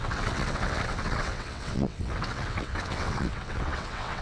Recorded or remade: remade